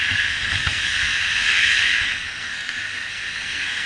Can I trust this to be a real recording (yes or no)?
no